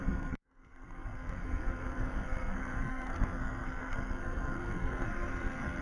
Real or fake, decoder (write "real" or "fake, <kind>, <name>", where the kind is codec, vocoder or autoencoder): fake, codec, SNAC